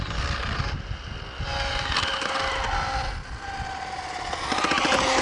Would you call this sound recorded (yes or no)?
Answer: yes